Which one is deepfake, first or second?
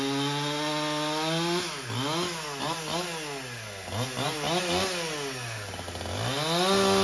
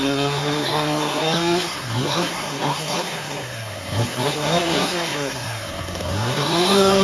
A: second